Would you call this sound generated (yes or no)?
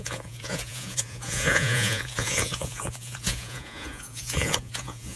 yes